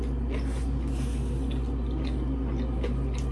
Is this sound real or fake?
real